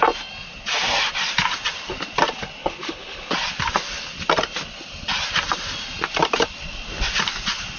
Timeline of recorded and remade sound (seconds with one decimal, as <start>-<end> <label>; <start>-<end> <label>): 0.0-2.6 recorded; 2.6-3.3 remade; 3.3-7.8 recorded

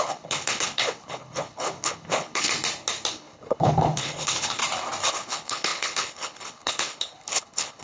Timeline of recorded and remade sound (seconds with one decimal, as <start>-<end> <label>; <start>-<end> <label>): 0.0-2.5 remade; 2.5-3.1 recorded; 3.1-4.6 remade; 4.6-5.1 recorded; 5.1-7.8 remade

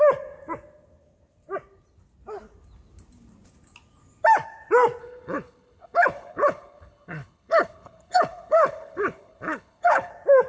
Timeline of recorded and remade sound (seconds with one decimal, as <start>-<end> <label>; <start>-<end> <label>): 0.0-5.0 recorded; 5.0-10.1 remade; 10.1-10.5 recorded

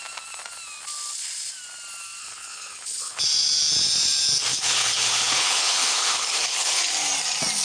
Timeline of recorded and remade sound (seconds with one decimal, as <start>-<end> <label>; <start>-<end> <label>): 0.0-2.2 recorded; 2.2-3.2 remade; 3.2-4.5 recorded; 4.5-6.8 remade; 6.8-7.6 recorded

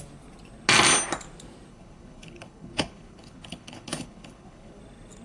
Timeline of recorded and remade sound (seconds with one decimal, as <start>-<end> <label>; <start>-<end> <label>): 0.0-1.7 recorded; 1.7-4.8 remade; 4.8-5.2 recorded